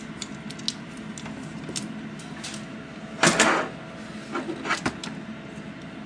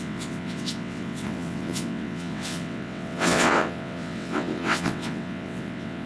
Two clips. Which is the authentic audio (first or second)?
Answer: first